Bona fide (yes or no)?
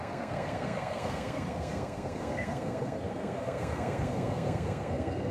no